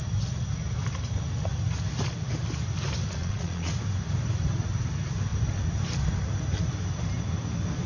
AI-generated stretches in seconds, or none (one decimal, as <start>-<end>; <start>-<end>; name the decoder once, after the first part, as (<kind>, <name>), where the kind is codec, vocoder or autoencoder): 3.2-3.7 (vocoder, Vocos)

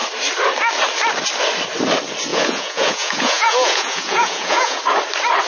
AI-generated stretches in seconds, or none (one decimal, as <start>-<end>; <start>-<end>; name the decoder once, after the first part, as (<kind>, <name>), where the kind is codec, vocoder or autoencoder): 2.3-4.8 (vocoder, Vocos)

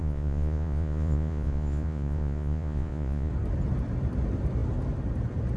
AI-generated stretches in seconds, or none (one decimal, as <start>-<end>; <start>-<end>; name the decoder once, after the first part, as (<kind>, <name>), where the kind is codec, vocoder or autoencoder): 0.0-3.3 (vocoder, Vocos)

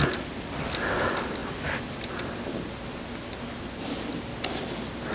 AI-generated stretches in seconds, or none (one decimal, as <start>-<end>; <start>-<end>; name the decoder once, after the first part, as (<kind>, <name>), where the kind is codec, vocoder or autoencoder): none

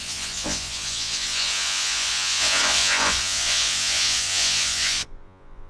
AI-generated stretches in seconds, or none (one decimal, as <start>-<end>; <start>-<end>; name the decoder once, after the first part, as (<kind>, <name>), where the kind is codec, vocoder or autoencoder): 0.0-5.7 (vocoder, Vocos)